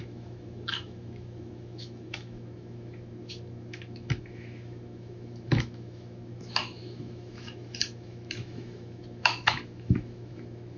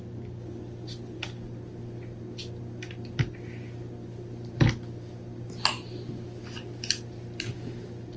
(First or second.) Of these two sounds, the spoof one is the first